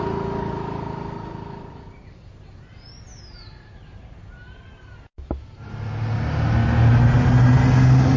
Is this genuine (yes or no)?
yes